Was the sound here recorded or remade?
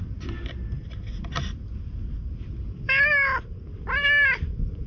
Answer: recorded